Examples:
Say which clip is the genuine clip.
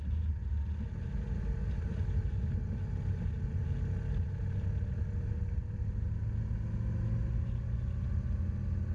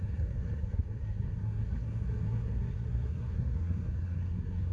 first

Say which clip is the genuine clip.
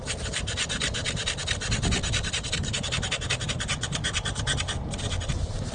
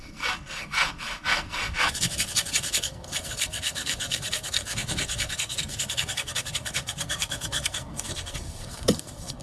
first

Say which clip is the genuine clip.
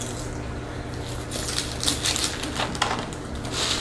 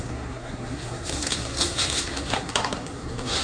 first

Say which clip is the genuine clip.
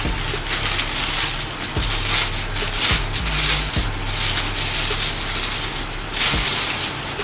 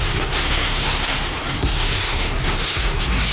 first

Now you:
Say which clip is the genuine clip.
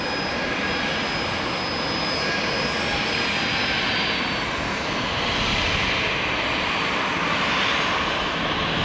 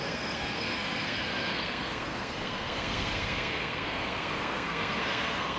first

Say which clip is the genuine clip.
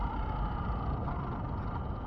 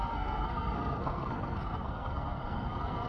first